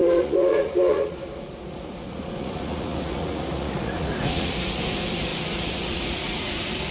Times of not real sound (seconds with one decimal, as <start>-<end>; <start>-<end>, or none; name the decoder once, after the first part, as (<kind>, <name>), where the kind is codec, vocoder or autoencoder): 0.0-6.9 (vocoder, Vocos)